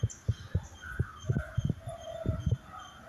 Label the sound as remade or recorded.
recorded